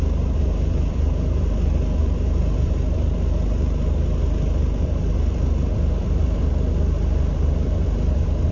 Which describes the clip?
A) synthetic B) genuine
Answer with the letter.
A